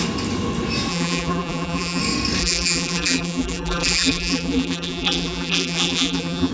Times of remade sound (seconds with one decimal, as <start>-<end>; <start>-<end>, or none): 0.9-2.0; 2.4-6.5